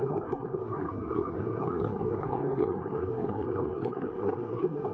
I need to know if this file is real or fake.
fake